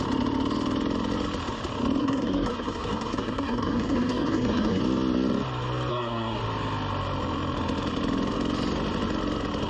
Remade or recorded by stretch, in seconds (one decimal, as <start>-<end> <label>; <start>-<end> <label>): 0.0-2.0 recorded; 2.0-4.8 remade; 4.8-5.9 recorded; 5.9-6.4 remade; 6.4-9.7 recorded